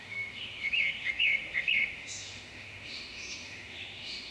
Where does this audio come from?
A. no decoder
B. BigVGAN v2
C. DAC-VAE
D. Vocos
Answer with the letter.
C